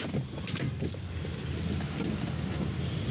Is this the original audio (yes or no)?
yes